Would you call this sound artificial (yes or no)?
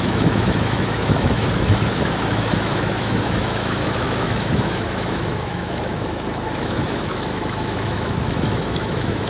yes